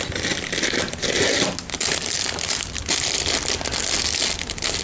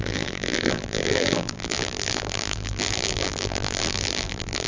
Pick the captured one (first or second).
first